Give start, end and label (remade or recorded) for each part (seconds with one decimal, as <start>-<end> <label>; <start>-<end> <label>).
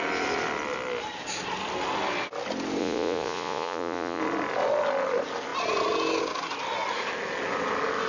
0.0-2.8 recorded; 2.8-4.2 remade; 4.2-8.1 recorded